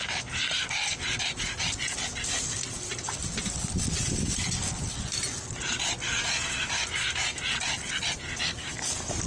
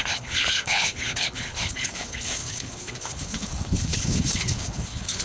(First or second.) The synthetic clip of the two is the second